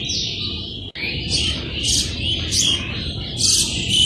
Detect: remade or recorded recorded